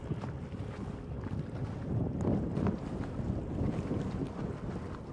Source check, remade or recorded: recorded